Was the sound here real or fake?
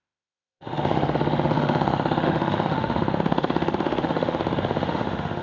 fake